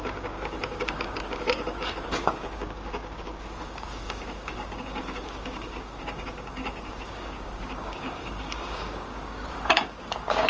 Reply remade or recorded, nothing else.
remade